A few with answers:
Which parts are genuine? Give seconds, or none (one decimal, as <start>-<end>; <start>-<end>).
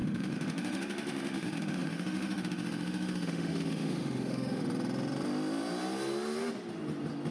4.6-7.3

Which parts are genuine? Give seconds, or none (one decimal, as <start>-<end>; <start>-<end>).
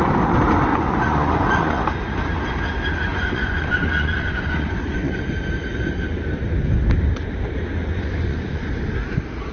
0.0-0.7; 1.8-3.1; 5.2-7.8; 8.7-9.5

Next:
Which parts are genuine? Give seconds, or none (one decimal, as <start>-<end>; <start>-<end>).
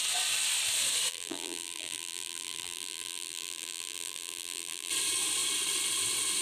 0.0-1.1; 4.9-6.4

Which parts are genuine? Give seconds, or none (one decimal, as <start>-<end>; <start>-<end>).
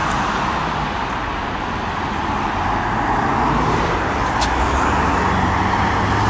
0.0-6.3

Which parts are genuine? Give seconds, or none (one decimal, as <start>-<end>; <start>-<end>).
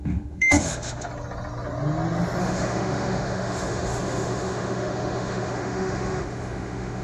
1.1-2.4